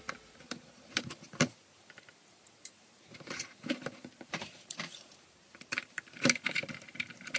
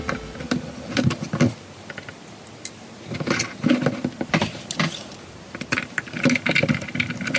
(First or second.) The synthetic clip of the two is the first